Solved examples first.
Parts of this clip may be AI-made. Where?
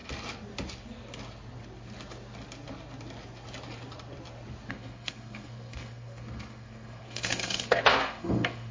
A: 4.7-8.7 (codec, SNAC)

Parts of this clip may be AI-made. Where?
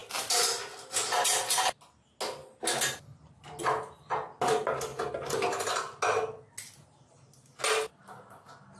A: none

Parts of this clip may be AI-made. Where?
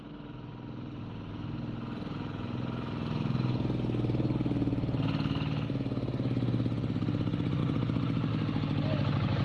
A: 7.6-8.3 (vocoder, BigVGAN v2)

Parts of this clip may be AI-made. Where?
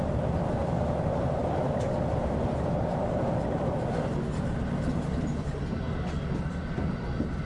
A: 1.4-1.9 (vocoder, BigVGAN v2)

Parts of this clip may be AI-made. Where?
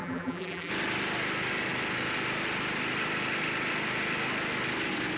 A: 0.0-0.7 (vocoder, BigVGAN v2)